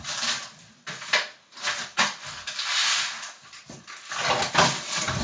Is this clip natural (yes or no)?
yes